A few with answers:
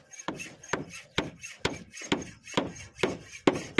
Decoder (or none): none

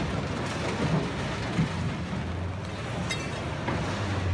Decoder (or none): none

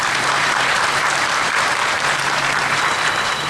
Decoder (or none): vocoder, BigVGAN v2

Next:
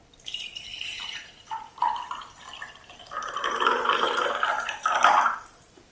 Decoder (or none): vocoder, BigVGAN v2